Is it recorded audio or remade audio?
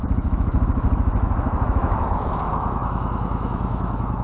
remade